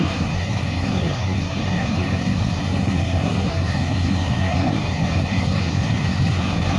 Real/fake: fake